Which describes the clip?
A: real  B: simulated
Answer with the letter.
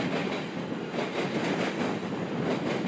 A